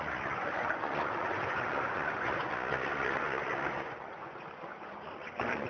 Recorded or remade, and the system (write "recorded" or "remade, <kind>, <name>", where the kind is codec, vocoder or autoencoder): remade, vocoder, Vocos